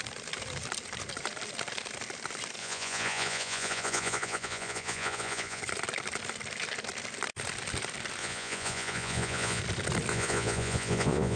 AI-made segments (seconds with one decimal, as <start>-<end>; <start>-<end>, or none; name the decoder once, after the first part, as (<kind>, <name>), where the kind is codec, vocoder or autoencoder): 2.6-5.6 (vocoder, Vocos); 8.2-9.6; 10.1-11.4